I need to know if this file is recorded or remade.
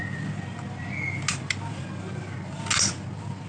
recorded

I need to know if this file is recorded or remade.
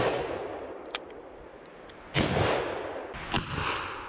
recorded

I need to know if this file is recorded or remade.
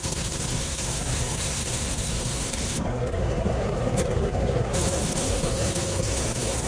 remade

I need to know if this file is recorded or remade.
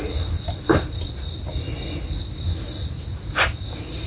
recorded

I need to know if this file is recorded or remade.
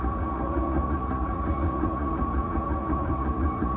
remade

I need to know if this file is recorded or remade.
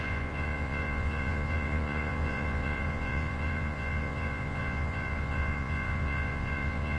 remade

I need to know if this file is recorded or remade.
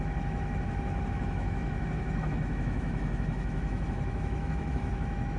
remade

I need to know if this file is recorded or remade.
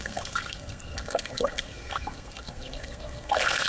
remade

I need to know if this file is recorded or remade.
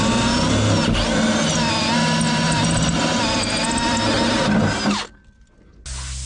recorded